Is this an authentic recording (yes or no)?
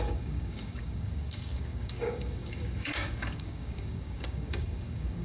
no